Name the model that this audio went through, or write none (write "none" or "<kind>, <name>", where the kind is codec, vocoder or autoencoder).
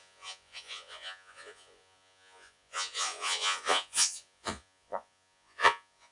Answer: vocoder, Vocos